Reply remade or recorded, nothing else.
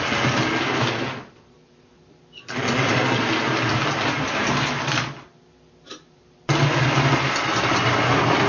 recorded